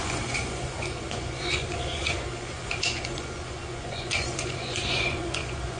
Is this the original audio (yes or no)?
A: no